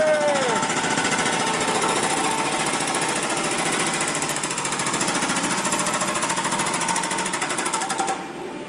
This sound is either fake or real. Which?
real